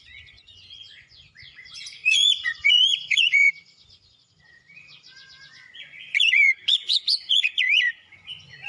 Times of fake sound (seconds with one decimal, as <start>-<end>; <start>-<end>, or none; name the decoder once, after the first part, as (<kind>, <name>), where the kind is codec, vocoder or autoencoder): 0.0-8.7 (vocoder, Vocos)